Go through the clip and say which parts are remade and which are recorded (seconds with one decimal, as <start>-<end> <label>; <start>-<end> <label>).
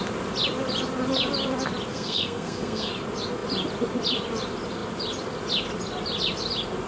0.0-1.9 recorded; 1.9-2.9 remade; 2.9-6.9 recorded